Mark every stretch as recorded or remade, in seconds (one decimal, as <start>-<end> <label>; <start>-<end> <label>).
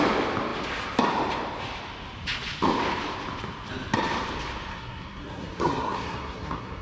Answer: 0.0-4.7 recorded; 4.7-6.8 remade